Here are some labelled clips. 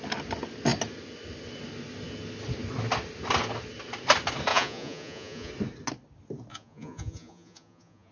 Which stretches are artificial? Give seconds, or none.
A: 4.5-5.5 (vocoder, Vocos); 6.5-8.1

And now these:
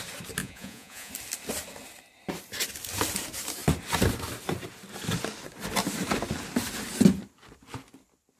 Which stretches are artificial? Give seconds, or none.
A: 0.4-1.1 (vocoder, Vocos)